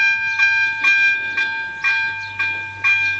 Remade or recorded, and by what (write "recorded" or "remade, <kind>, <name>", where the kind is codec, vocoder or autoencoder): recorded